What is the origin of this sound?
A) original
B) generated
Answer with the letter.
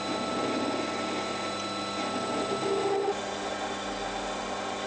A